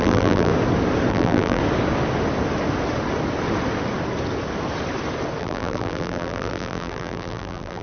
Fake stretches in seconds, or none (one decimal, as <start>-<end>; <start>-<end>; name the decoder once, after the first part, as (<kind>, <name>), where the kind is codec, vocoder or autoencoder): 0.0-0.5 (vocoder, BigVGAN v2); 1.1-1.6; 5.4-7.8